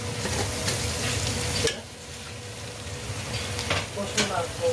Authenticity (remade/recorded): recorded